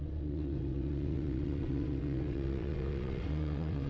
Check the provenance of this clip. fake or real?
fake